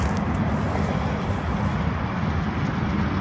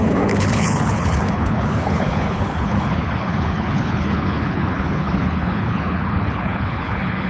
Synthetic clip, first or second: second